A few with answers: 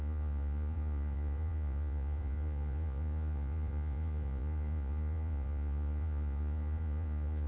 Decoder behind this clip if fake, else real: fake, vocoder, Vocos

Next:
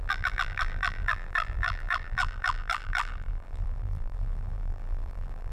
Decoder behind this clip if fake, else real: fake, vocoder, BigVGAN v2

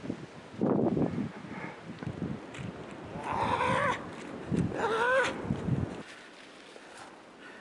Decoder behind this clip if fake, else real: real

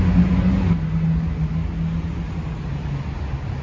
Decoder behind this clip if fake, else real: real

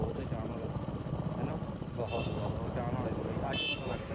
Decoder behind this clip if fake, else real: real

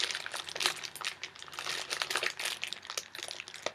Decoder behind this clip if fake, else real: real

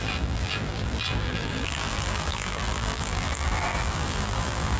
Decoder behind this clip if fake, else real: fake, vocoder, BigVGAN v2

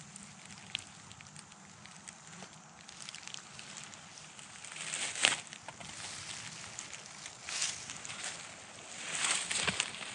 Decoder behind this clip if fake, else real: real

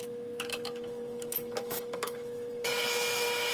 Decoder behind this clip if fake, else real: fake, autoencoder, DAC-VAE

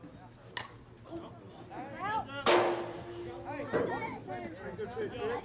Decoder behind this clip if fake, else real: real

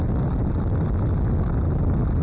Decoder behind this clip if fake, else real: real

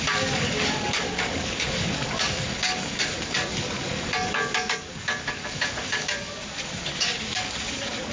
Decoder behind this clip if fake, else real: fake, codec, DAC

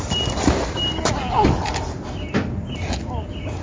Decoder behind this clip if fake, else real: real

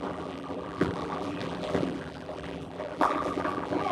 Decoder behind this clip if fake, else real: fake, vocoder, BigVGAN v2